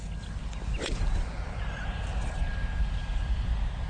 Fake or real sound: real